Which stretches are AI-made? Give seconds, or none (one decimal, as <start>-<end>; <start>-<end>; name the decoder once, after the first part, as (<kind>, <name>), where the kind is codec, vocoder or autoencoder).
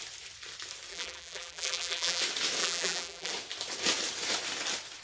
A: 0.9-2.2 (vocoder, BigVGAN v2); 2.6-3.3